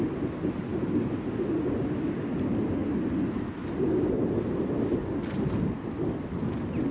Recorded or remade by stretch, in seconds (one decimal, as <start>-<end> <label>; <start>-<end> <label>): 0.0-6.9 recorded